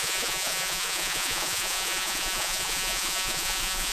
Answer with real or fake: fake